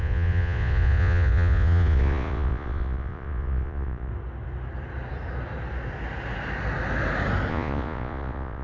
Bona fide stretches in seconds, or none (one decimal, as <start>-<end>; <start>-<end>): 4.1-7.5